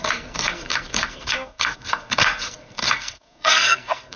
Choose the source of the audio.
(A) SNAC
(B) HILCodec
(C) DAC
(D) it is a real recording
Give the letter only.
A